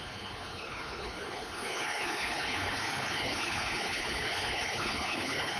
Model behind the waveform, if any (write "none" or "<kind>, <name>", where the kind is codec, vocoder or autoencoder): codec, HILCodec